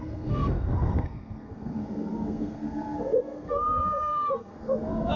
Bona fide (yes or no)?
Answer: no